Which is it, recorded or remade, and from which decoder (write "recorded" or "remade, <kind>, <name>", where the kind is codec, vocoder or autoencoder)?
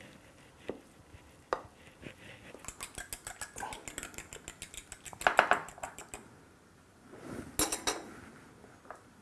recorded